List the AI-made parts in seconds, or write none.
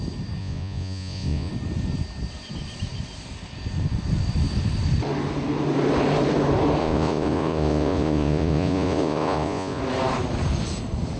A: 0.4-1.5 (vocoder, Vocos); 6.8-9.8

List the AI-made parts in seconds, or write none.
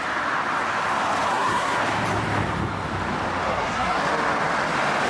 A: 1.3-1.8 (codec, SNAC); 3.5-4.0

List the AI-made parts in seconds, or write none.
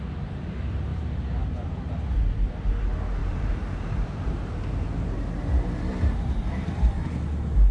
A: 0.9-1.8 (vocoder, BigVGAN v2); 3.2-7.1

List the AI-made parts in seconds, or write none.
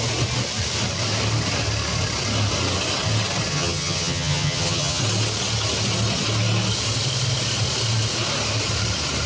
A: 3.5-5.0 (vocoder, HiFi-GAN)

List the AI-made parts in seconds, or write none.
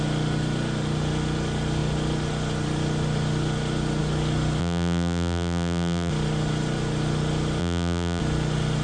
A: 4.6-6.1 (vocoder, BigVGAN v2); 7.6-8.2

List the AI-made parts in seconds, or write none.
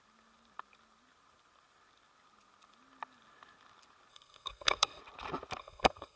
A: 4.1-5.0 (codec, SNAC); 5.6-6.2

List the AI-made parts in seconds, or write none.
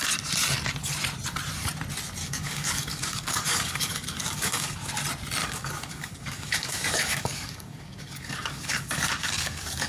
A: 2.2-4.9 (codec, DAC); 5.4-9.9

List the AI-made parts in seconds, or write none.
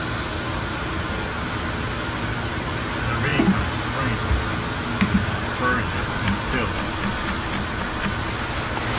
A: none